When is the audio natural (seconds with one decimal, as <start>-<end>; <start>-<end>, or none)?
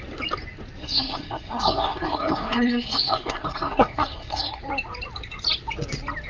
0.0-0.8; 4.6-6.3